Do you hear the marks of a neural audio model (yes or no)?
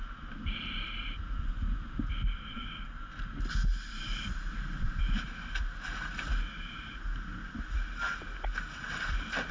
no